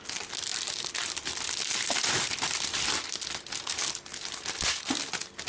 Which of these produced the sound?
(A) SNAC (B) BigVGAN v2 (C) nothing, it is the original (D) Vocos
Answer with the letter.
C